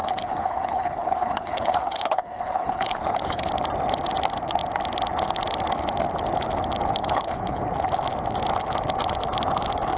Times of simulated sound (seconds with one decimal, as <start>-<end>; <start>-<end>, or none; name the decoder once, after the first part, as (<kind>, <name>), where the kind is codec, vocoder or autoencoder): 0.0-3.5 (codec, HILCodec); 7.0-7.6